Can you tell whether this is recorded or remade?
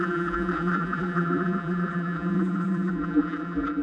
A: remade